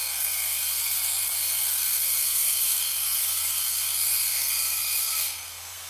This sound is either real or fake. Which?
fake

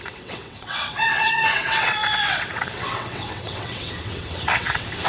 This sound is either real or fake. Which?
fake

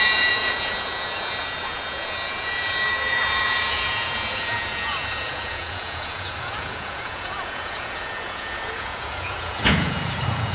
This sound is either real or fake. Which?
fake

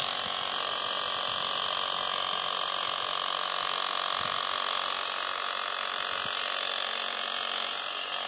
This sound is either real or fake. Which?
real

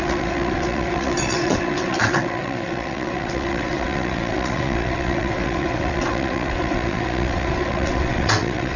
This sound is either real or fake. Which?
fake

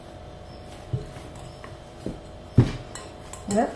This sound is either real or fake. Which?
real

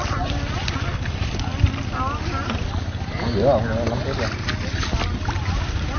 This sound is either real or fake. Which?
real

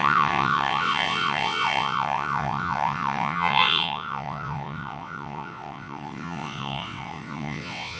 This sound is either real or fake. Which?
fake